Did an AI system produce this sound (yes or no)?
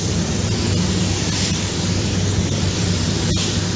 yes